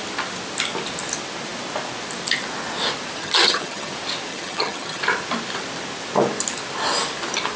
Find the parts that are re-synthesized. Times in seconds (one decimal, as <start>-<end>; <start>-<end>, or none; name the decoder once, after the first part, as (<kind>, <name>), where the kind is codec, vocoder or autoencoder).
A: 3.2-3.9 (vocoder, HiFi-GAN); 4.3-5.0

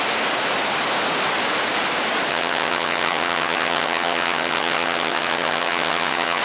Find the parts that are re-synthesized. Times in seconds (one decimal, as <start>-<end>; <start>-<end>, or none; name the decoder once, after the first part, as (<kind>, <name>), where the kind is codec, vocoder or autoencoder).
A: 2.3-6.4 (vocoder, HiFi-GAN)